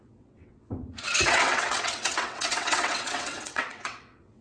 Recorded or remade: remade